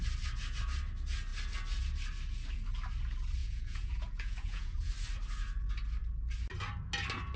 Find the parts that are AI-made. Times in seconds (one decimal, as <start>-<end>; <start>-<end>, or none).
3.4-4.9